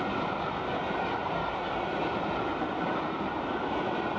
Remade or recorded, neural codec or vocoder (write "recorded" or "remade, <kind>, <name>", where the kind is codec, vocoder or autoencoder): recorded